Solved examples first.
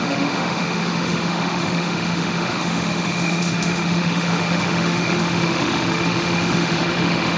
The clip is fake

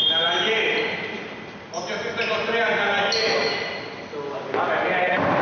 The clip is real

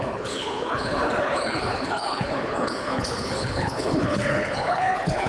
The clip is fake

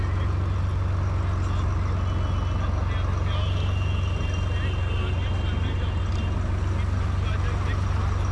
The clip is real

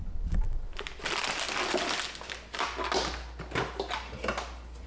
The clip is real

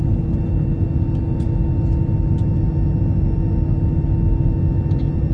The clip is real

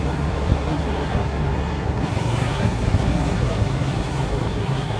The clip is fake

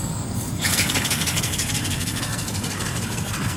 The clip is fake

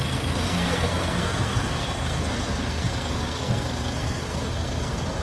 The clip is fake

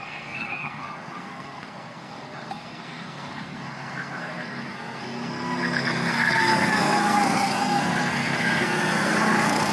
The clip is fake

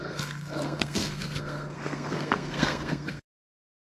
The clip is fake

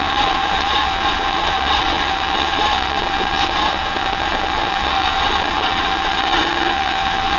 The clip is fake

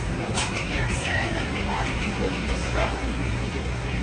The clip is fake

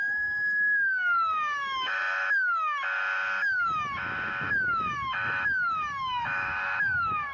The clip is fake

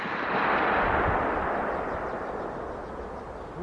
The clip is real